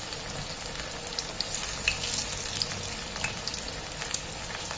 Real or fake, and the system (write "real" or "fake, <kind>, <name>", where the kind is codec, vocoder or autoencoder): real